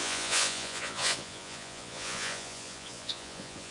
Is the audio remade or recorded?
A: remade